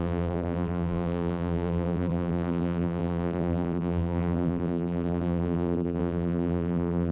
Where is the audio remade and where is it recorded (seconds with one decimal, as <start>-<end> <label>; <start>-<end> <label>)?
0.0-7.1 remade